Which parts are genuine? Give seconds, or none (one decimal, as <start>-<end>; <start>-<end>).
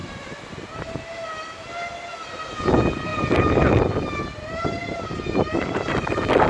2.1-3.1; 5.6-6.5